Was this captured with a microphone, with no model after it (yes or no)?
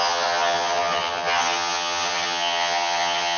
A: no